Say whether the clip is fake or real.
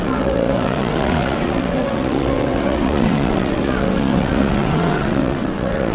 fake